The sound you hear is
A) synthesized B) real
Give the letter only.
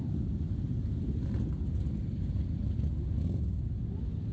B